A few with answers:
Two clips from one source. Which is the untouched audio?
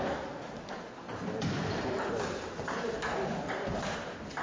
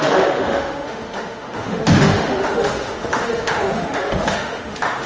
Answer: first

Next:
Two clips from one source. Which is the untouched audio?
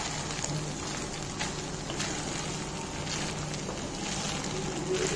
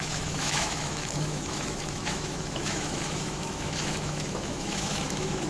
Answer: first